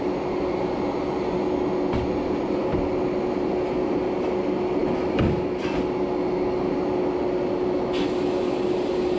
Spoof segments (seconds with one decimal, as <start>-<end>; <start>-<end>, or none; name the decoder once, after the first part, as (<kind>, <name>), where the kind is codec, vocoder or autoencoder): none